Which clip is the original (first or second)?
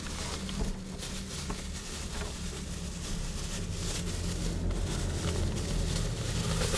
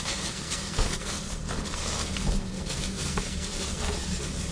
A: first